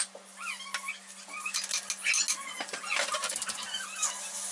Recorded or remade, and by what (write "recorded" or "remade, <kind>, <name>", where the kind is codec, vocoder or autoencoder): recorded